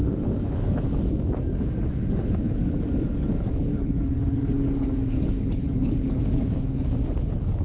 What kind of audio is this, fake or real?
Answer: fake